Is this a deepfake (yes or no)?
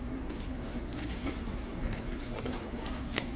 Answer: yes